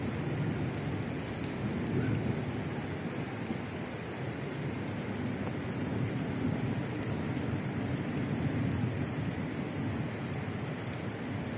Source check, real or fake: real